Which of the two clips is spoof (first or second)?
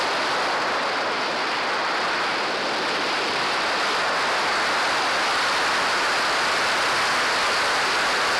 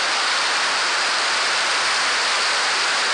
second